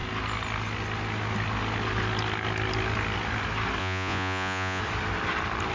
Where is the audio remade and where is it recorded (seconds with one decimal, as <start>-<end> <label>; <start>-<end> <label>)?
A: 0.0-3.8 recorded; 3.8-4.8 remade; 4.8-5.7 recorded